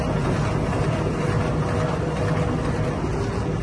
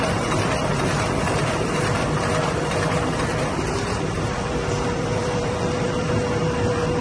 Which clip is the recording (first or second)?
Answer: first